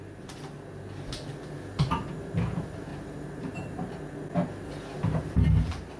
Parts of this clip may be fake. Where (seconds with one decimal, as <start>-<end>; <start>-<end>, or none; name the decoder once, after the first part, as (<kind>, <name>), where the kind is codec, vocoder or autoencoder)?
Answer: 2.9-4.0 (vocoder, BigVGAN v2)